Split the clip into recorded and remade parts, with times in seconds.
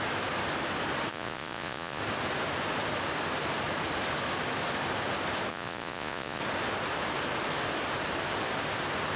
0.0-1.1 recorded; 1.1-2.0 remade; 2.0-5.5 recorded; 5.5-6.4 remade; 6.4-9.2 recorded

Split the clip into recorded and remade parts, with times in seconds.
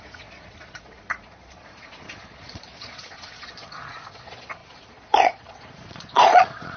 0.0-6.8 remade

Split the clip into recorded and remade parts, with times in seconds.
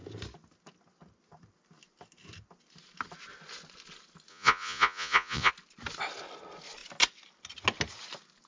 0.0-4.3 recorded; 4.3-5.5 remade; 5.5-8.5 recorded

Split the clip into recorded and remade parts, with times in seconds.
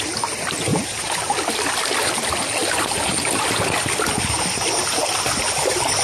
0.0-0.7 recorded; 0.7-1.2 remade; 1.2-6.0 recorded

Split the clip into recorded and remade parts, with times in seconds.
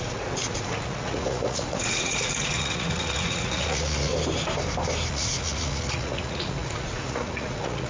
0.0-4.1 remade; 4.1-5.1 recorded; 5.1-7.9 remade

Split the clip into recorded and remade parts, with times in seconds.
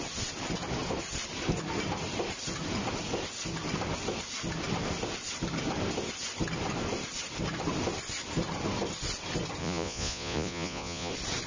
0.0-9.6 recorded; 9.6-11.1 remade; 11.1-11.5 recorded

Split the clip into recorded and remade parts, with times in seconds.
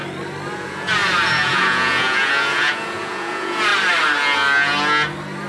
0.0-0.5 recorded; 0.5-3.7 remade; 3.7-5.5 recorded